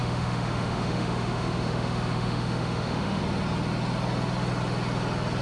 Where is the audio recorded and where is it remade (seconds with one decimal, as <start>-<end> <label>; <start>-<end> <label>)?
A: 0.0-3.2 remade; 3.2-5.4 recorded